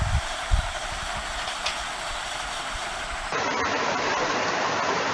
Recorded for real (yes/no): yes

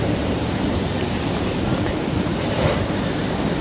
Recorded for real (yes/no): no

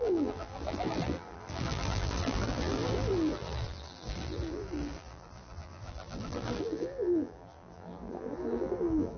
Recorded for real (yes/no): no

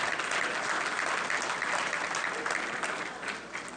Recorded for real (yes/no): no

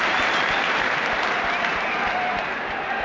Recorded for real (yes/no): no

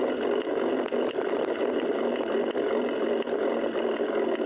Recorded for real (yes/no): yes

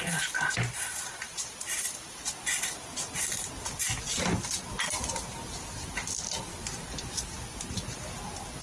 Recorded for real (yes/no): yes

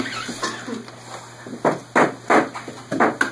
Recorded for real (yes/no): yes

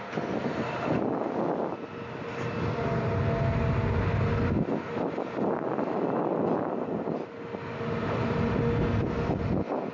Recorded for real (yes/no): yes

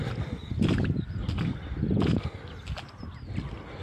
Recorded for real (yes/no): yes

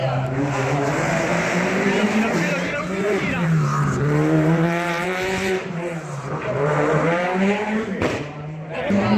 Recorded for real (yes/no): no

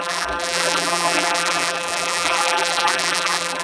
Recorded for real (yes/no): no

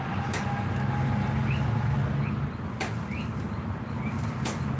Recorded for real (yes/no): yes